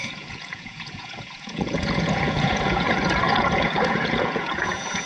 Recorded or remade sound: remade